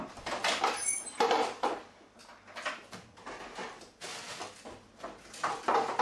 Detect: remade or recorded recorded